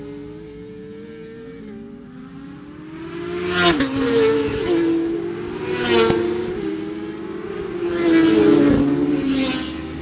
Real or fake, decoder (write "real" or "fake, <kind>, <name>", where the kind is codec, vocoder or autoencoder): real